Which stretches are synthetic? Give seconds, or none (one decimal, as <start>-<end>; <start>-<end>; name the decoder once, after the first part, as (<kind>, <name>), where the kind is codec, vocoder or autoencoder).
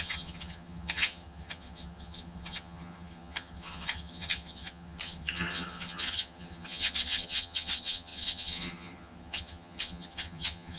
0.0-10.8 (vocoder, HiFi-GAN)